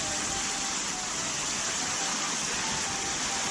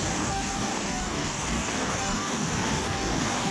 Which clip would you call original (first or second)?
first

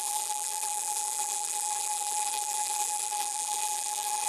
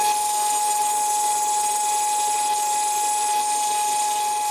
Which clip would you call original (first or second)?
second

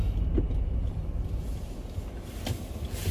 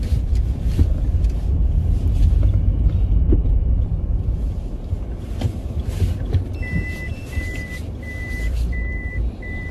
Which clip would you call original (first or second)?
first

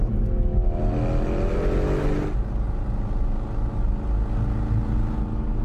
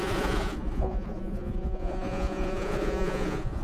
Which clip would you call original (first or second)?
first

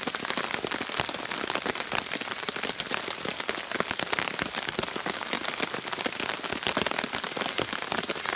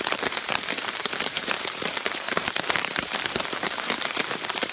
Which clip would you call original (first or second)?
first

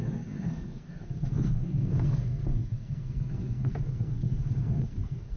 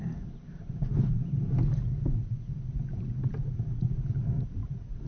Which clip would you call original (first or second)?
second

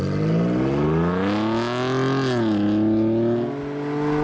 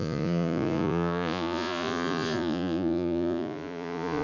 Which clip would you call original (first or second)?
first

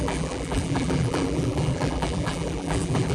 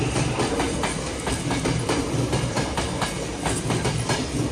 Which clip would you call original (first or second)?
second